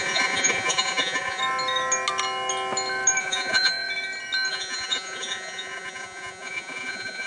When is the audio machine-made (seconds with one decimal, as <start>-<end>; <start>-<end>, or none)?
0.0-1.4; 3.2-3.7; 4.5-7.3